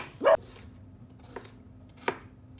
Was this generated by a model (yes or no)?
no